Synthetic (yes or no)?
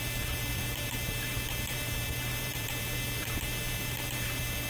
yes